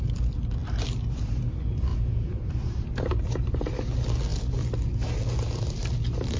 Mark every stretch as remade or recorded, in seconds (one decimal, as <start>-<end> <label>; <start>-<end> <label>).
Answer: 0.0-1.9 recorded; 1.9-2.5 remade; 2.5-6.4 recorded